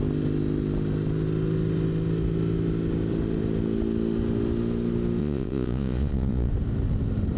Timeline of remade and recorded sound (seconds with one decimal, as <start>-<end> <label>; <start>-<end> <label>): 0.0-5.2 recorded; 5.2-6.5 remade; 6.5-7.4 recorded

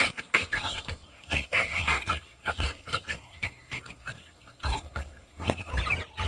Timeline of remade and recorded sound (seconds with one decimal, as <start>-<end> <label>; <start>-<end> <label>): 0.0-5.7 remade; 5.7-6.3 recorded

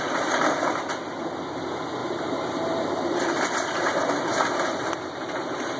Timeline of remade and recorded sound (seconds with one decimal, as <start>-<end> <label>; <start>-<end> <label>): 0.0-2.0 recorded; 2.0-4.9 remade; 4.9-5.8 recorded

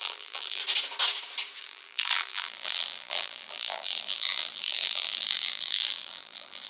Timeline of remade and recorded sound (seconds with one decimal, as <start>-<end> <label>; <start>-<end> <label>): 0.0-0.6 remade; 0.6-1.6 recorded; 1.6-6.7 remade

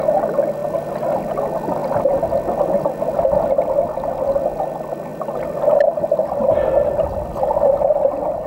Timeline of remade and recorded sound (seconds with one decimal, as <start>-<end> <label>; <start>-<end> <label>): 0.0-0.6 recorded; 0.6-1.3 remade; 1.3-5.1 recorded; 5.1-8.5 remade